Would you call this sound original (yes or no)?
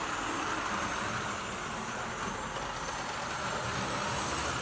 yes